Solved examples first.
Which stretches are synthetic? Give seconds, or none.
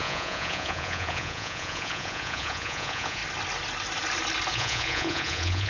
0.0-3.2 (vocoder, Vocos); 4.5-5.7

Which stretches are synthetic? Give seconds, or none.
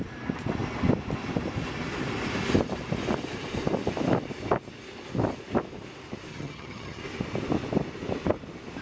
6.3-7.0 (vocoder, HiFi-GAN)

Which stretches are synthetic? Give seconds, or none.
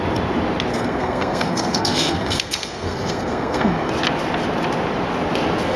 0.7-3.9 (codec, SNAC)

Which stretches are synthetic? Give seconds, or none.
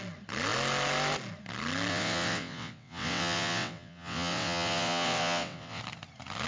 1.9-5.8 (vocoder, WaveNeXt)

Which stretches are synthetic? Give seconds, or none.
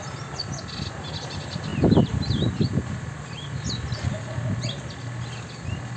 none